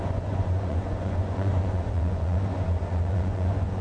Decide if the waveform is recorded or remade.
remade